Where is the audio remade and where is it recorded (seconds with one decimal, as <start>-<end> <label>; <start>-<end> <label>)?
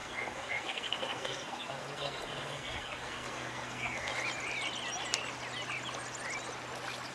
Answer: 0.0-4.1 remade; 4.1-7.1 recorded